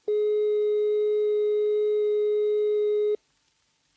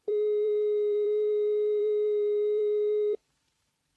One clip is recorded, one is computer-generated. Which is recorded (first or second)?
first